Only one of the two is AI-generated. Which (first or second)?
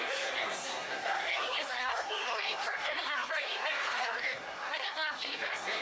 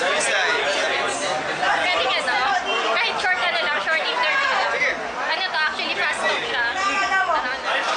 first